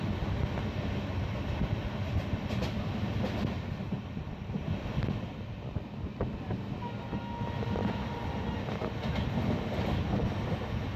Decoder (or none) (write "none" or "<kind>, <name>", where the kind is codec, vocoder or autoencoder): none